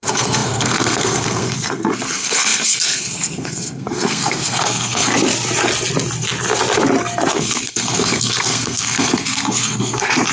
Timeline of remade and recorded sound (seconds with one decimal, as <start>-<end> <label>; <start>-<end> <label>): 0.0-5.1 remade; 5.1-7.3 recorded; 7.3-10.3 remade